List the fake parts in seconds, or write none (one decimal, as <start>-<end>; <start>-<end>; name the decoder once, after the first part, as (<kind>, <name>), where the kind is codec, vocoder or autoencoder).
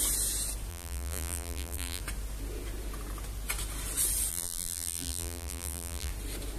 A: 0.7-2.0 (vocoder, BigVGAN v2); 4.3-6.1